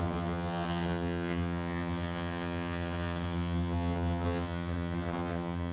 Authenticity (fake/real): fake